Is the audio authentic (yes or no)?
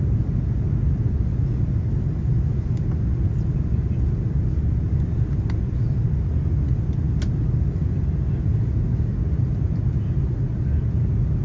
yes